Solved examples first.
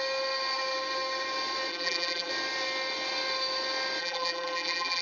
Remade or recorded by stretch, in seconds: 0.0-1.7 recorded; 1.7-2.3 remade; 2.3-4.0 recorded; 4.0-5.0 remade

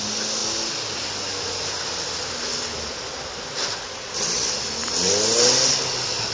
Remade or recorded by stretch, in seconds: 0.0-6.3 recorded

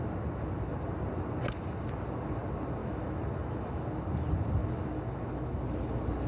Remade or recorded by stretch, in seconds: 0.0-2.8 recorded; 2.8-4.0 remade; 4.0-4.6 recorded; 4.6-5.6 remade; 5.6-6.3 recorded

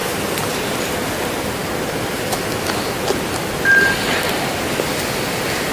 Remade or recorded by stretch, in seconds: 0.0-0.9 remade; 0.9-5.7 recorded

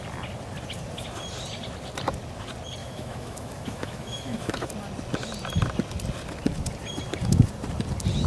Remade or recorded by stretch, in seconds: 0.0-2.8 recorded; 2.8-4.7 remade; 4.7-8.3 recorded